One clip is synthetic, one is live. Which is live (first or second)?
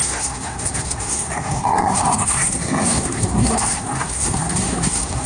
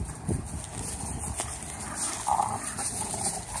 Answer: second